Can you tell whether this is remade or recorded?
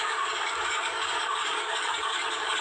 remade